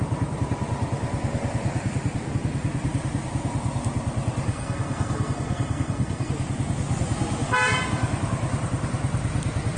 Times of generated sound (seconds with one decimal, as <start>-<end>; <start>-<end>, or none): 4.5-6.3